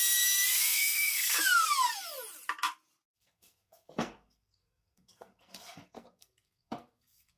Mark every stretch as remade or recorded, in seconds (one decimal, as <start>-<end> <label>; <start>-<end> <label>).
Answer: 0.0-0.5 recorded; 0.5-1.4 remade; 1.4-3.1 recorded; 3.1-7.4 remade